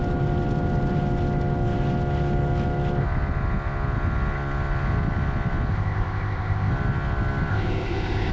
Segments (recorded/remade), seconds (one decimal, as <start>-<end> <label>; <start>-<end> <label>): 0.0-5.7 recorded; 5.7-6.7 remade; 6.7-7.5 recorded; 7.5-8.3 remade